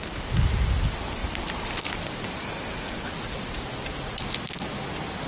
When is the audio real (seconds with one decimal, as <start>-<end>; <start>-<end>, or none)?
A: 0.0-5.3